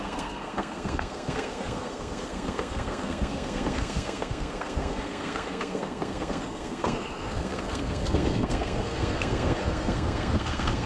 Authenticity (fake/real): fake